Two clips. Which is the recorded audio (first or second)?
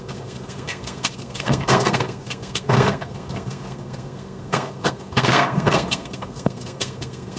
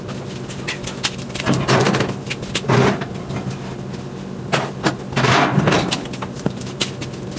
second